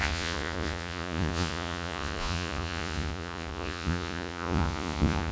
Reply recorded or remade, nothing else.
remade